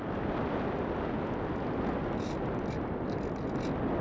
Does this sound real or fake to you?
real